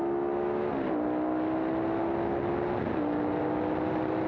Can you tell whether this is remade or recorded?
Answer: recorded